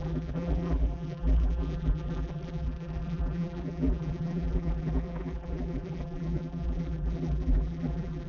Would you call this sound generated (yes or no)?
yes